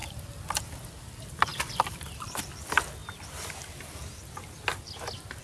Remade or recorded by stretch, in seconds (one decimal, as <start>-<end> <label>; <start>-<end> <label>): 0.0-0.6 remade; 0.6-1.5 recorded; 1.5-2.4 remade; 2.4-5.4 recorded